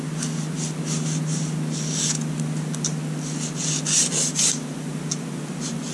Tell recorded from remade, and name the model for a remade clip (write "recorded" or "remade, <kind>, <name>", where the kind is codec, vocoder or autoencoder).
recorded